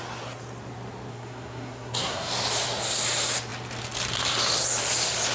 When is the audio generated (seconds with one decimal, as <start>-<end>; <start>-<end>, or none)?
1.1-2.3